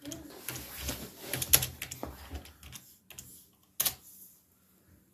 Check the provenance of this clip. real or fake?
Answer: real